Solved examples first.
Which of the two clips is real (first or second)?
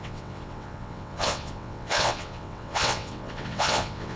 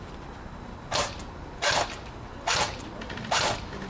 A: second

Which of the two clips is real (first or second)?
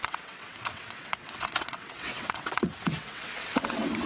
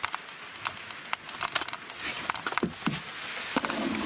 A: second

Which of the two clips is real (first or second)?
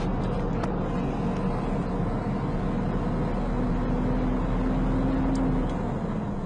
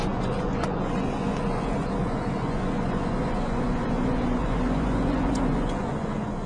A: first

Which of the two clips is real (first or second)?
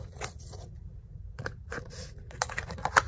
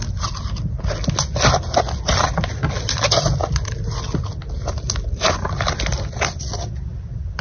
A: second